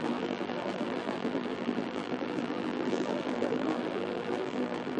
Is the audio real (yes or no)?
no